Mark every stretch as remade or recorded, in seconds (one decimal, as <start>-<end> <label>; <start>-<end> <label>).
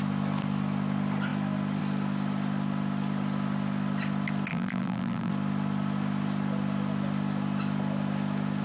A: 0.0-4.5 recorded; 4.5-5.3 remade; 5.3-8.6 recorded